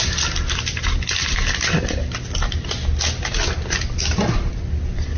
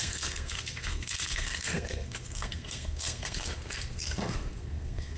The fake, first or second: second